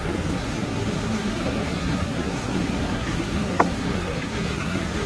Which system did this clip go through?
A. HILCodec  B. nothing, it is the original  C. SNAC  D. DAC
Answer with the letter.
C